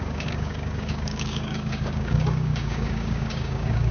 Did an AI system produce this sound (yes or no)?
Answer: yes